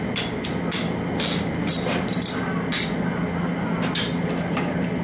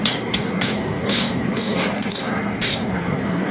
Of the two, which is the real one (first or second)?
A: first